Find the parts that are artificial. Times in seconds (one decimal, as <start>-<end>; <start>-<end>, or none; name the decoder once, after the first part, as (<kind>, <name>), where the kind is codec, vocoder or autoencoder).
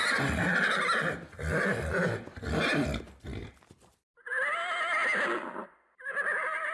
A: none